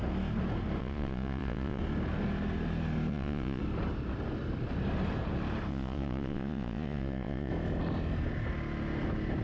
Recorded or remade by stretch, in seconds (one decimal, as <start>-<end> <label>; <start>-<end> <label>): 0.0-0.8 recorded; 0.8-1.8 remade; 1.8-3.1 recorded; 3.1-3.6 remade; 3.6-5.7 recorded; 5.7-7.5 remade; 7.5-9.4 recorded